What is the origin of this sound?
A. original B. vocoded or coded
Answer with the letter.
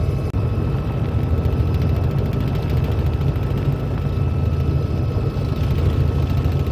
A